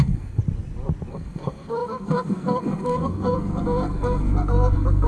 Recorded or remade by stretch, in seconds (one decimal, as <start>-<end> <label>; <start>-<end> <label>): 0.0-0.4 remade; 0.4-1.1 recorded; 1.1-5.1 remade